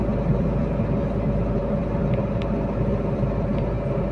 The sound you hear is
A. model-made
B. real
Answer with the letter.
B